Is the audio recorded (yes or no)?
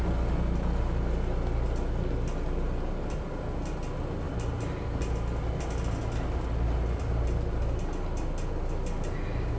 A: yes